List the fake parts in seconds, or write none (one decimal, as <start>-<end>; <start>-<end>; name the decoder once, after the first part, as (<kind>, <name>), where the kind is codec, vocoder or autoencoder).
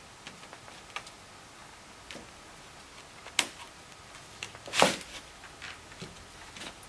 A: none